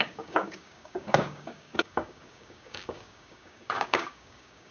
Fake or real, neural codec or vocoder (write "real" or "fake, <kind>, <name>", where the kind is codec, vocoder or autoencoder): fake, codec, DAC